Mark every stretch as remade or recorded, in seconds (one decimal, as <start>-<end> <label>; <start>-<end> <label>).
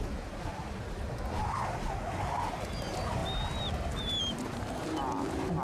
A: 0.0-5.6 recorded